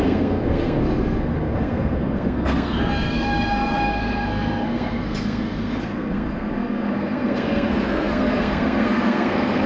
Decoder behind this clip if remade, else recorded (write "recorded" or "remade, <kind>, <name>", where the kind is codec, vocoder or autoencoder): remade, codec, SNAC